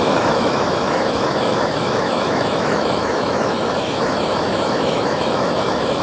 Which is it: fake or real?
fake